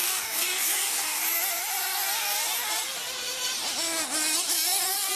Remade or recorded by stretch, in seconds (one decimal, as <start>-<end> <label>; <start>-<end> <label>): 0.0-1.2 remade; 1.2-5.2 recorded